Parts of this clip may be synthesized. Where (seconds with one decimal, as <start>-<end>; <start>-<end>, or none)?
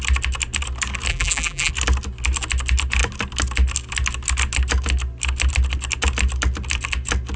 1.1-1.7